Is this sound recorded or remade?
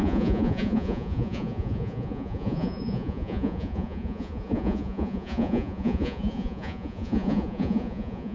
remade